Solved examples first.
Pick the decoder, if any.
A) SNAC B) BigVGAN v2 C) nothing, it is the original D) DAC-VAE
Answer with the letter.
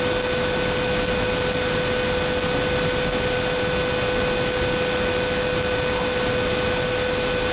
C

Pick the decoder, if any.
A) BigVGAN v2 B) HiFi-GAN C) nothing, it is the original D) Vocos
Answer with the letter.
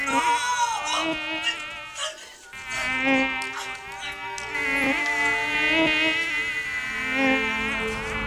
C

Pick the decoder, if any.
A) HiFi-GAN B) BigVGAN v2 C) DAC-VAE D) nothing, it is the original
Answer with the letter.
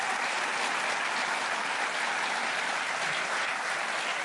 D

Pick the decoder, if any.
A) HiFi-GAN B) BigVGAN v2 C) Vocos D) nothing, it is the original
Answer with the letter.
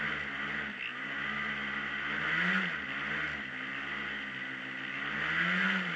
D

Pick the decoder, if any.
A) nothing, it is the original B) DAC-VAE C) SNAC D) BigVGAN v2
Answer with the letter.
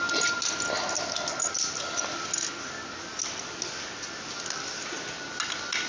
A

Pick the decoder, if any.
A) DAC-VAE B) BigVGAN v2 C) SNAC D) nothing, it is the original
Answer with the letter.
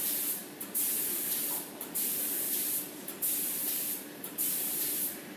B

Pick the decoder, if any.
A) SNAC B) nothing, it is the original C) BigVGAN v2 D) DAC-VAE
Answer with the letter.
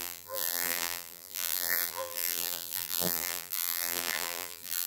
C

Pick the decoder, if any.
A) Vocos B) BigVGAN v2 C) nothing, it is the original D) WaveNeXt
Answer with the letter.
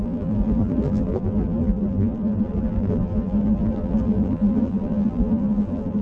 B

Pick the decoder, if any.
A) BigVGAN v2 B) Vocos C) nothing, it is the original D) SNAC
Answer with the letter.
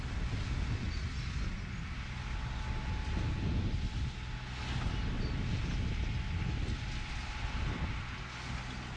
C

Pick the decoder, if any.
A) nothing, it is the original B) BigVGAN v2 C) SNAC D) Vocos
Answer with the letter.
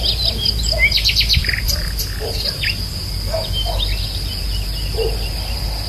A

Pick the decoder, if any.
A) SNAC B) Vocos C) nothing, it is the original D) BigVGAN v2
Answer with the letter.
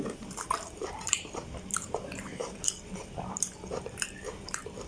D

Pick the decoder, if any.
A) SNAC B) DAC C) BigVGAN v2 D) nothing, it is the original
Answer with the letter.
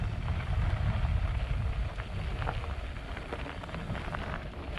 D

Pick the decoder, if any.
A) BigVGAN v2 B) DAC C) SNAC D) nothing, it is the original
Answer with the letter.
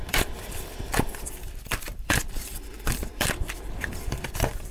A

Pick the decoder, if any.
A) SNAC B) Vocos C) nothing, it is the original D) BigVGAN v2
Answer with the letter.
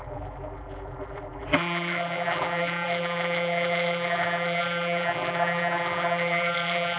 D